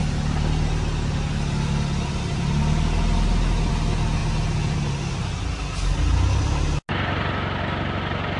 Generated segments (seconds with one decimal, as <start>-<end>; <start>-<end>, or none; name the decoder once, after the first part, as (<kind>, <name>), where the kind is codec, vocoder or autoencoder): none